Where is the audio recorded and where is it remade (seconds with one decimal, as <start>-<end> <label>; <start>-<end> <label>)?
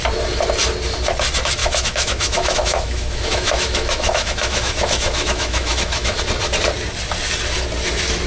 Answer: 0.0-1.6 recorded; 1.6-6.2 remade; 6.2-8.3 recorded